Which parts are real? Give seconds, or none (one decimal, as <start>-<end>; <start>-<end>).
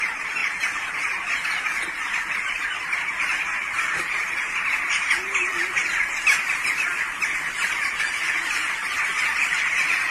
0.0-10.1